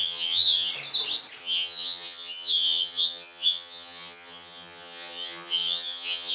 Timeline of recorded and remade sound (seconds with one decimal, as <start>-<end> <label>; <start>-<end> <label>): 0.0-0.7 remade; 0.7-1.4 recorded; 1.4-6.3 remade

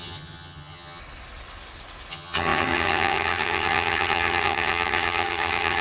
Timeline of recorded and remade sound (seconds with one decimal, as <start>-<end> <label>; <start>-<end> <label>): 0.0-1.0 remade; 1.0-2.1 recorded; 2.1-5.8 remade

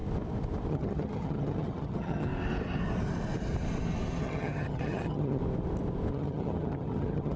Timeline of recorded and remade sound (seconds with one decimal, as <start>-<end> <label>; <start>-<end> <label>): 0.0-0.7 recorded; 0.7-2.3 remade; 2.3-4.2 recorded; 4.2-5.4 remade; 5.4-6.1 recorded; 6.1-7.4 remade

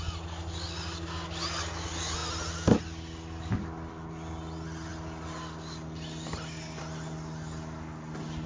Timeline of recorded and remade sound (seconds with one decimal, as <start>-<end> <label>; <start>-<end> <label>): 0.0-8.5 recorded

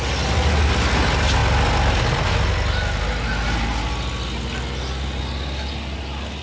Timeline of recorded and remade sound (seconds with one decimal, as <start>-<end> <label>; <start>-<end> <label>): 0.0-6.4 recorded